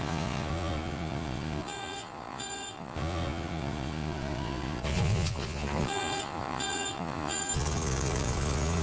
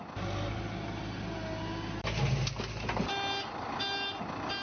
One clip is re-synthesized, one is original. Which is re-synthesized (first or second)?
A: first